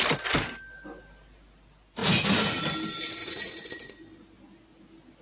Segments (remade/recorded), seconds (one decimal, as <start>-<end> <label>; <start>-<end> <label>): 0.0-2.0 recorded; 2.0-2.7 remade; 2.7-3.2 recorded; 3.2-3.9 remade; 3.9-5.2 recorded